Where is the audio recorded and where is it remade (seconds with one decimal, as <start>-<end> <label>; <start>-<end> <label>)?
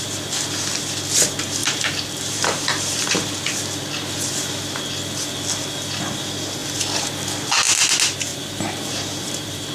0.0-1.6 recorded; 1.6-3.6 remade; 3.6-8.3 recorded; 8.3-9.7 remade